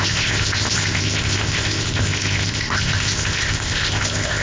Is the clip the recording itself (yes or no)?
no